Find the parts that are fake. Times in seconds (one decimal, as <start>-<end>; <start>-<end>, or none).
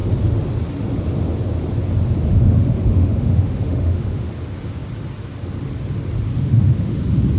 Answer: 2.3-4.3; 6.3-7.0